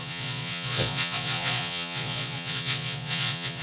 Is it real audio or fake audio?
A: fake